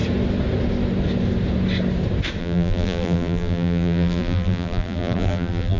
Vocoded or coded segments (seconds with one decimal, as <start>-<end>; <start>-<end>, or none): 2.4-5.8